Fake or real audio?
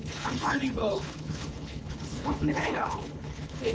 fake